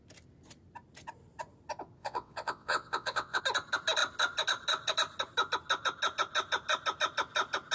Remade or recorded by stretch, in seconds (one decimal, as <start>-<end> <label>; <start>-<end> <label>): 0.0-2.0 recorded; 2.0-3.4 remade; 3.4-7.7 recorded